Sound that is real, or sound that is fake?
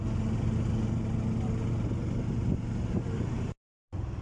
real